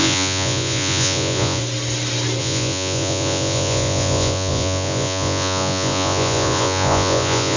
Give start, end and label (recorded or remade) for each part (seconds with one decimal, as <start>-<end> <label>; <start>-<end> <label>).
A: 0.0-1.6 remade; 1.6-2.4 recorded; 2.4-7.6 remade